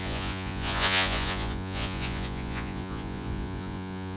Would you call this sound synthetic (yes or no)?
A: yes